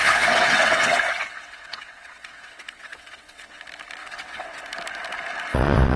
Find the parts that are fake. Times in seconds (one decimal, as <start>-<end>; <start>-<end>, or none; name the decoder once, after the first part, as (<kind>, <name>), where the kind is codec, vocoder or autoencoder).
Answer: 0.0-3.6 (vocoder, WaveNeXt); 4.0-4.6; 5.5-6.0